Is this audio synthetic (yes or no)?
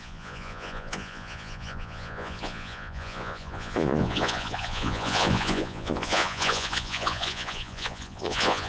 yes